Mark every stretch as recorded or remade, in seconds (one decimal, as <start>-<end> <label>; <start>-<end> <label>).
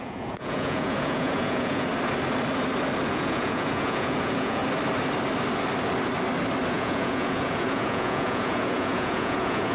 0.0-1.9 remade; 1.9-3.1 recorded; 3.1-4.6 remade; 4.6-6.7 recorded; 6.7-9.7 remade